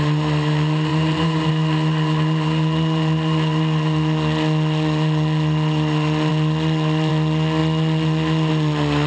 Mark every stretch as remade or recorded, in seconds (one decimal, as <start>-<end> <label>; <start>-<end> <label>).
0.0-0.9 recorded; 0.9-1.5 remade; 1.5-9.1 recorded